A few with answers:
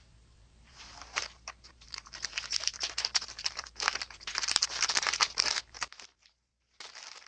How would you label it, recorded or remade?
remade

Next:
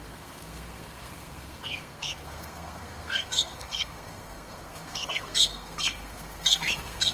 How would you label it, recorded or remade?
remade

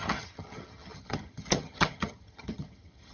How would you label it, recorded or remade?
remade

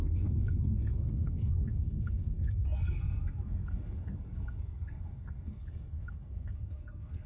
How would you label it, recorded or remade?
remade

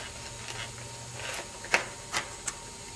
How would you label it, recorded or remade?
recorded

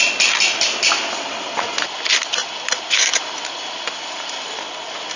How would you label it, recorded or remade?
recorded